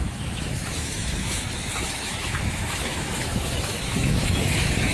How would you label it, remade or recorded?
remade